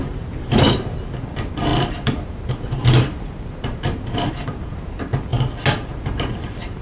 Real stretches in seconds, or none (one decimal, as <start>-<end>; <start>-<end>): 5.3-5.8